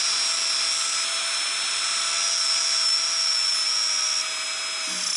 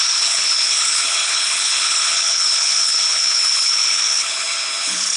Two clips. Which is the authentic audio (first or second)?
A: first